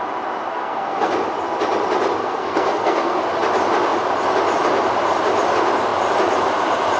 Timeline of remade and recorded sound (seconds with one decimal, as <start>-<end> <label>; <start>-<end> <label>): 0.0-0.5 recorded; 0.5-1.1 remade; 1.1-2.2 recorded; 2.2-3.2 remade; 3.2-7.0 recorded